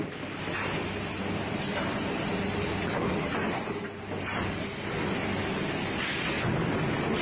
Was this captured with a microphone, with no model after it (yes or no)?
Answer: yes